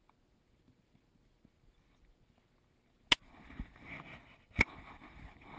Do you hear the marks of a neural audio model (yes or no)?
no